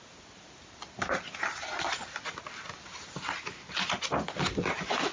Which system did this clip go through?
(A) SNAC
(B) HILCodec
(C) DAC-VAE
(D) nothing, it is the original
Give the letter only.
D